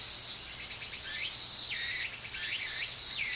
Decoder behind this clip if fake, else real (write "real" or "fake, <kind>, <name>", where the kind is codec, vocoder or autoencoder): real